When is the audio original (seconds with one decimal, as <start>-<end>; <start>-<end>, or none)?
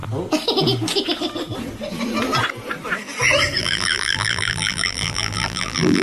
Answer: 0.0-3.6